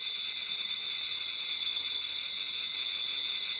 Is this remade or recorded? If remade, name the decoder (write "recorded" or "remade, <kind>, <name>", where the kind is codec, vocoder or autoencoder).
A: recorded